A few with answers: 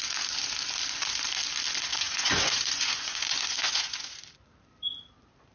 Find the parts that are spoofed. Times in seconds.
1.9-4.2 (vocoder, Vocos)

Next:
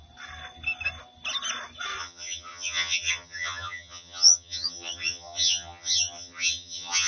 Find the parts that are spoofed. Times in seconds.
2.0-7.1 (vocoder, HiFi-GAN)

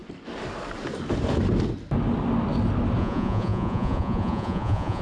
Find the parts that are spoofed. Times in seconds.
3.0-5.0 (vocoder, Vocos)

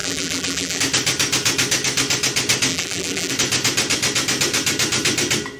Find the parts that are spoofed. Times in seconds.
0.0-0.8 (vocoder, BigVGAN v2); 2.7-3.3

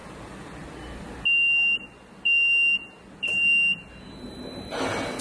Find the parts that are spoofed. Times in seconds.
none

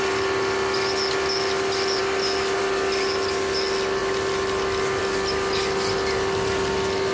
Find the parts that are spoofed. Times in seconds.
none

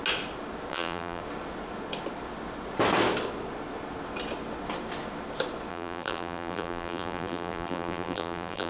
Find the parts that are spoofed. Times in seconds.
0.7-1.2 (vocoder, BigVGAN v2); 5.7-8.7

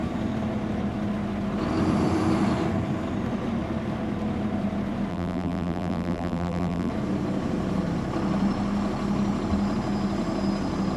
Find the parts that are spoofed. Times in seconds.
5.1-6.9 (vocoder, BigVGAN v2)